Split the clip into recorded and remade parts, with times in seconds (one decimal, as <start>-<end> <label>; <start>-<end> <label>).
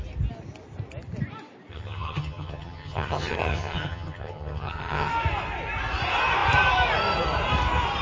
0.0-1.7 recorded; 1.7-5.1 remade; 5.1-8.0 recorded